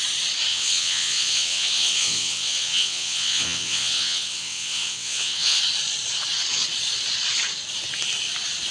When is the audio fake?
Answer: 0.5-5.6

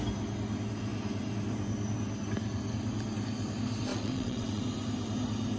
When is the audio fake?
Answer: 3.9-4.6

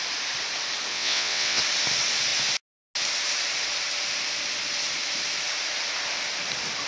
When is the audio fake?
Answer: 0.9-1.6

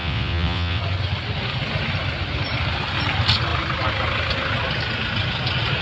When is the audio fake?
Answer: 0.0-0.8